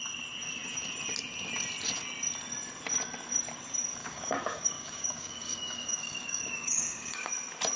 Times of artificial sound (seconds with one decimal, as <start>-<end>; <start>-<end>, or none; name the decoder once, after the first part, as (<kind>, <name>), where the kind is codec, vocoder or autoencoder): 4.0-7.3 (codec, DAC)